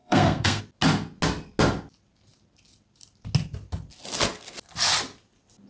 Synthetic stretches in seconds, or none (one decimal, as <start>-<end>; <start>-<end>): 0.0-0.6